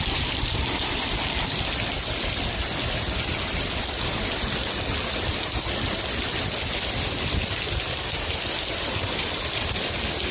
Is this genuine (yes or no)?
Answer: yes